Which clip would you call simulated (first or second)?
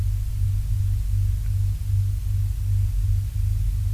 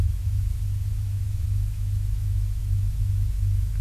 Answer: second